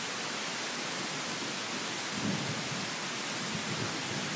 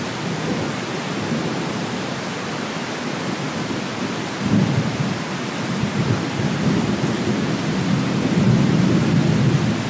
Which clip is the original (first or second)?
first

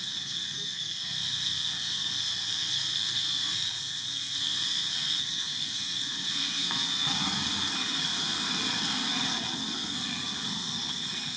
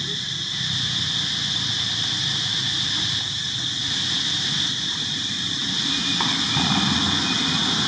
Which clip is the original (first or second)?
second